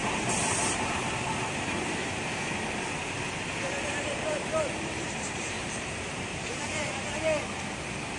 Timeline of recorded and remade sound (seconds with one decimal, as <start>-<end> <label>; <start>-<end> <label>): 0.0-2.7 remade; 2.7-3.8 recorded; 3.8-7.1 remade; 7.1-8.2 recorded